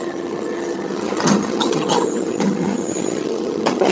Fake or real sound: fake